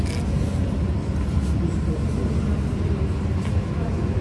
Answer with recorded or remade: recorded